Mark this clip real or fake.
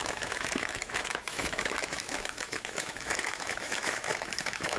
fake